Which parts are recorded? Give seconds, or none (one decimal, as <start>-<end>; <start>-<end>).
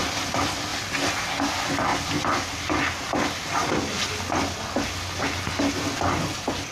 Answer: 0.0-6.7